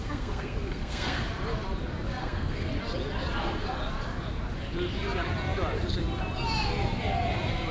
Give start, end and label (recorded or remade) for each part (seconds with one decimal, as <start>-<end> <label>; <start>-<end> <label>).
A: 0.0-1.2 remade; 1.2-2.2 recorded; 2.2-2.7 remade; 2.7-7.7 recorded